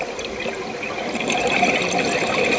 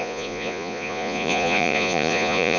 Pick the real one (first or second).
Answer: first